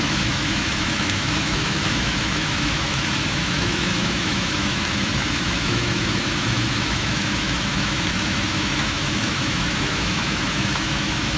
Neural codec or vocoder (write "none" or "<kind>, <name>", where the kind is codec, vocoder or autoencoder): autoencoder, DAC-VAE